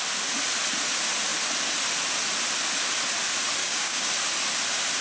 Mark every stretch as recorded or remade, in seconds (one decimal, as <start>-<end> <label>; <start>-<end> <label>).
0.0-3.6 recorded; 3.6-4.1 remade; 4.1-5.0 recorded